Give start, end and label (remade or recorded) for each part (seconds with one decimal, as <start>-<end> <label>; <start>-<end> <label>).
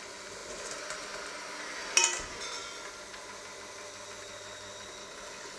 0.0-5.0 recorded; 5.0-5.6 remade